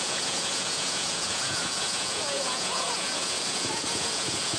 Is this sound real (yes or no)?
no